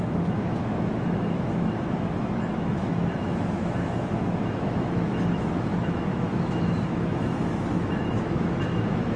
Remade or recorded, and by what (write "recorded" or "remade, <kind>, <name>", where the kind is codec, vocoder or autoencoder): remade, autoencoder, DAC-VAE